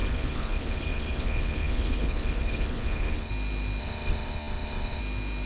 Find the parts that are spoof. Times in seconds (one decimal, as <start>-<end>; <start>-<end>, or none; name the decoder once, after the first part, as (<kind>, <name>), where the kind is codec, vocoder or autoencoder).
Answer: 0.0-3.3 (codec, HILCodec); 3.8-5.0